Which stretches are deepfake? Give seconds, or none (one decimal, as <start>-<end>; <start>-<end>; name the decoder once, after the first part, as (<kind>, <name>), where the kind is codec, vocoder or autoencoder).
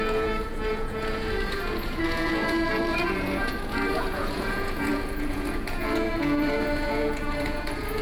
0.0-8.0 (vocoder, Vocos)